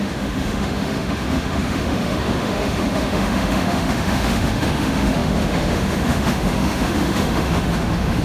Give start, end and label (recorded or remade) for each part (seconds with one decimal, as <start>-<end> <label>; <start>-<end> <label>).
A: 0.0-8.2 remade